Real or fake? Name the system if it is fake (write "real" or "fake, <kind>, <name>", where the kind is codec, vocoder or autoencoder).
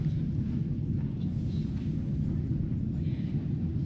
real